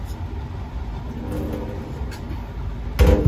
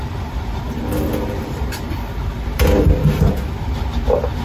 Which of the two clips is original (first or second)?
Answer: first